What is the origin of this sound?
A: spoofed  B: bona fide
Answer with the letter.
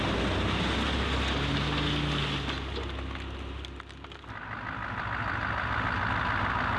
B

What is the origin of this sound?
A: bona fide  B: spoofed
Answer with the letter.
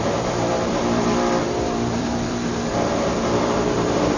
B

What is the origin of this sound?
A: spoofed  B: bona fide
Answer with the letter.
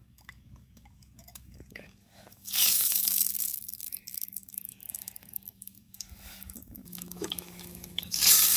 A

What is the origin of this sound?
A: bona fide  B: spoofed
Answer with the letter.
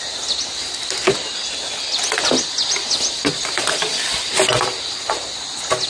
A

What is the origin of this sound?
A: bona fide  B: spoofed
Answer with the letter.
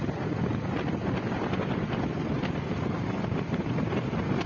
A